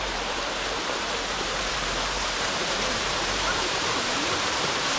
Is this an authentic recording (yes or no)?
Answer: no